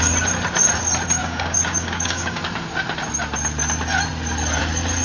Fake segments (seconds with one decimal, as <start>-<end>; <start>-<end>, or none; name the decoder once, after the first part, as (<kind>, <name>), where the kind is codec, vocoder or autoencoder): 1.2-2.4 (codec, DAC)